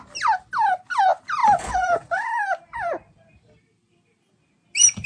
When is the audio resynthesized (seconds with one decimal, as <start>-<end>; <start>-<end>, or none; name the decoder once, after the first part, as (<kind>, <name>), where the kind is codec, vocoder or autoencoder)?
1.4-4.5 (vocoder, BigVGAN v2)